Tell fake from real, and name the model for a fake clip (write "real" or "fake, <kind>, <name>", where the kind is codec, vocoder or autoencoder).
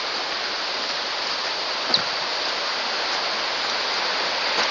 real